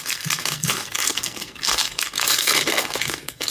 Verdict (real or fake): fake